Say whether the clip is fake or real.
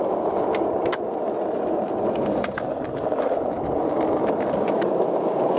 real